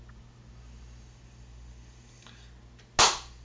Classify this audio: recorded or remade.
recorded